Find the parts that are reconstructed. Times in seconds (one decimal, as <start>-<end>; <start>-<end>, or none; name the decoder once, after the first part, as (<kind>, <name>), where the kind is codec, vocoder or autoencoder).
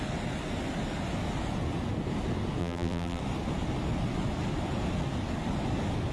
2.6-3.2 (vocoder, BigVGAN v2)